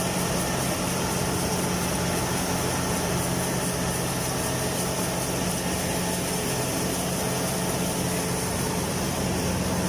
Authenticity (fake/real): real